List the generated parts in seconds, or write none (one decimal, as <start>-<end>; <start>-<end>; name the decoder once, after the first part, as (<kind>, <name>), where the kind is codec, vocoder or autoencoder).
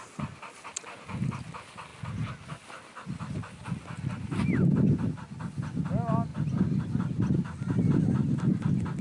none